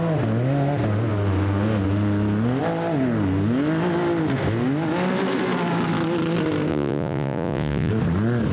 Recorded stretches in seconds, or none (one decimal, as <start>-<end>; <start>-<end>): 0.0-6.7; 7.9-8.5